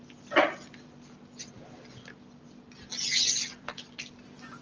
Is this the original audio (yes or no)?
yes